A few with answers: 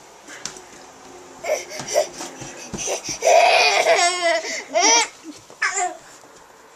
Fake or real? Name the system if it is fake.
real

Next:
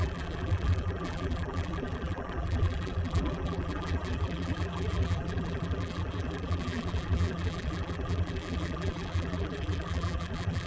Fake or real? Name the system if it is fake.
fake, vocoder, BigVGAN v2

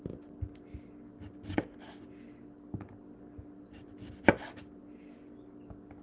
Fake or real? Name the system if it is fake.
real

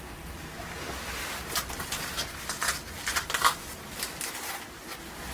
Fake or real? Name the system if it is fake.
real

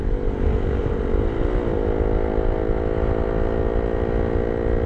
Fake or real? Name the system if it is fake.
real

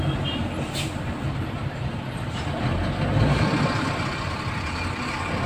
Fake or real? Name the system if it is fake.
real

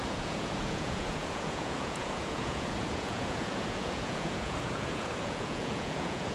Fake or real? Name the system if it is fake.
fake, vocoder, Vocos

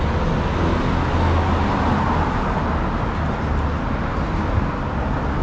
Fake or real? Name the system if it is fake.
real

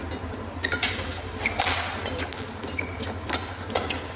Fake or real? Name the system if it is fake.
real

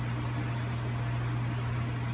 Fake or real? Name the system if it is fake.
real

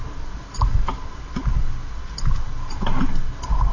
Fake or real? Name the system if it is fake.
real